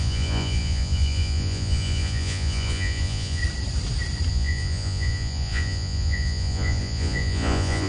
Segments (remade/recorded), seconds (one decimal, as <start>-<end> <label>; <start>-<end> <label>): 0.0-3.4 remade; 3.4-4.3 recorded; 4.3-7.9 remade